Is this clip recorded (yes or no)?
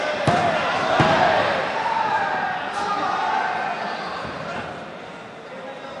yes